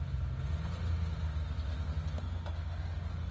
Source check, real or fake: real